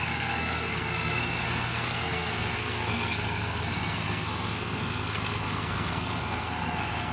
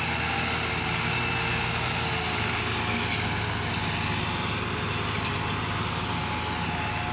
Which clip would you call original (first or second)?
second